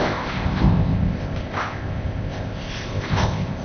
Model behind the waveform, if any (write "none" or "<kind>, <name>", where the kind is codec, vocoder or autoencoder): codec, ZipCodec